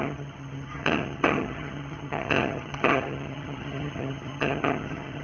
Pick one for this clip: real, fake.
fake